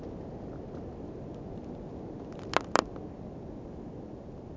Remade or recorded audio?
recorded